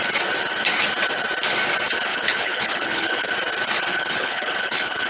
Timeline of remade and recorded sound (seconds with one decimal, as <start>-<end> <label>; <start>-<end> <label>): 0.0-2.1 recorded; 2.1-3.3 remade; 3.3-3.9 recorded; 3.9-5.1 remade